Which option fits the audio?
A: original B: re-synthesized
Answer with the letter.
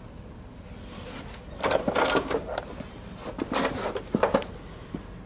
A